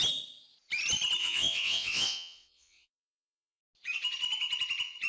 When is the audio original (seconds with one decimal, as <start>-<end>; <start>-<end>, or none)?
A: 0.0-1.2; 3.6-5.1